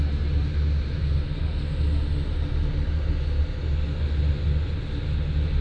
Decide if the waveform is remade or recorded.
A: recorded